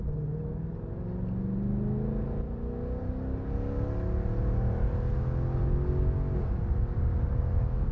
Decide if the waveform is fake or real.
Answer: real